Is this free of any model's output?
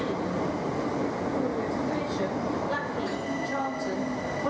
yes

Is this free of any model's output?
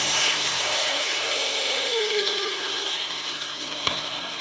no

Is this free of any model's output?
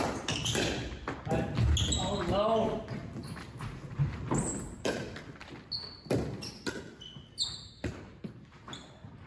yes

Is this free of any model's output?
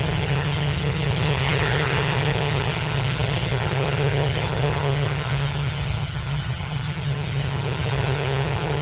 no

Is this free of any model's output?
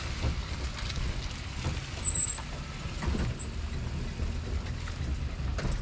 yes